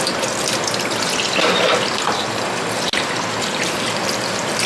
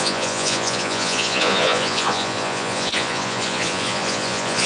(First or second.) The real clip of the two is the first